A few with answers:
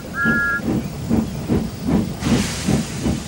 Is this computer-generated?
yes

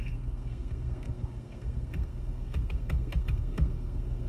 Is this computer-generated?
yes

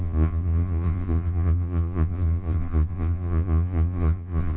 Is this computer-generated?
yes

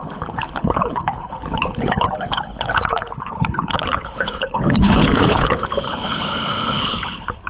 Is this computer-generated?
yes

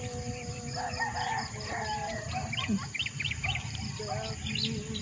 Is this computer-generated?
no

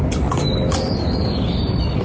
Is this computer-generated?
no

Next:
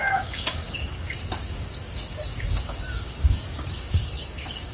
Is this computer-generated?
yes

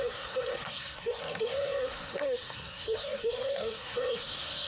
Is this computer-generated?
yes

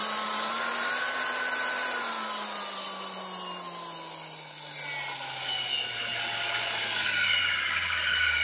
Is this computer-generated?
no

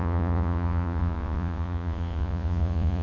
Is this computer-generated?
yes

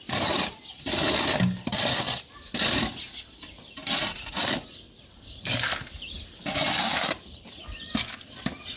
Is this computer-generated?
no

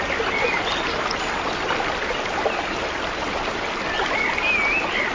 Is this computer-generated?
no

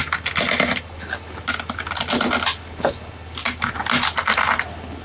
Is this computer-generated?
no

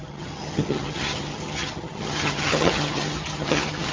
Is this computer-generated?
yes